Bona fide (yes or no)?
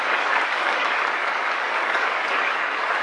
no